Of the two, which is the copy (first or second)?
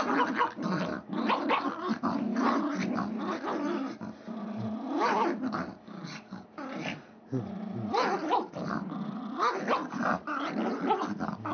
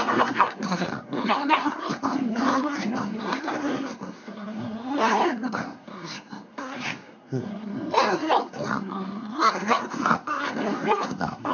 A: second